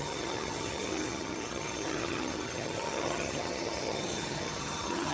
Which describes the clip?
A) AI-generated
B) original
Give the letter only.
A